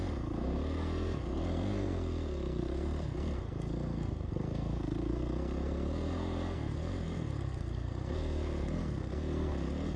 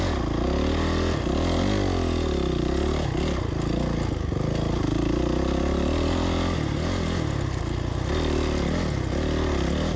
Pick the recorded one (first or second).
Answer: second